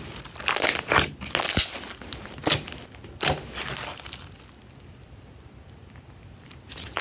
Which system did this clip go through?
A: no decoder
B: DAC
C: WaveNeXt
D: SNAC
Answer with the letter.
A